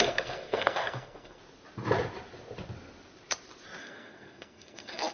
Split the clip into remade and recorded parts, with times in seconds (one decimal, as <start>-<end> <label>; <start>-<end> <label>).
0.0-1.4 remade; 1.4-3.8 recorded; 3.8-5.1 remade